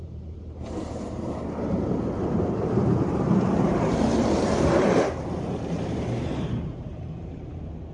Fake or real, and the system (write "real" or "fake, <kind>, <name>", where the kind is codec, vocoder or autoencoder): fake, vocoder, BigVGAN v2